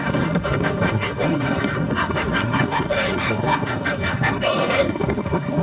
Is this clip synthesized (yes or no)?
yes